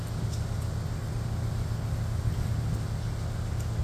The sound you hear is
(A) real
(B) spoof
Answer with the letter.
A